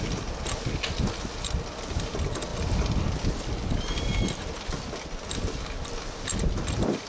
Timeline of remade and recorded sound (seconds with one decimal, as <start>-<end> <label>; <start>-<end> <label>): 0.0-7.1 recorded